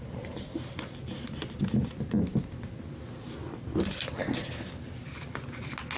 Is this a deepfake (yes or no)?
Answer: no